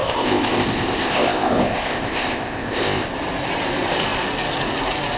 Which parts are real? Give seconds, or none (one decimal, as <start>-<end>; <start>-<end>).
3.1-5.2